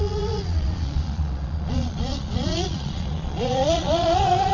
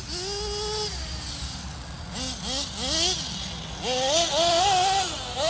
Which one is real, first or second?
second